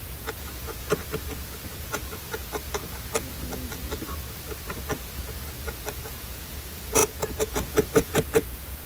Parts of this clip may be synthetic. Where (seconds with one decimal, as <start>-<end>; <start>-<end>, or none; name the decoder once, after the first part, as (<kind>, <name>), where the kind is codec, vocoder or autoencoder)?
0.0-1.0 (vocoder, Vocos); 1.7-2.4; 6.0-8.9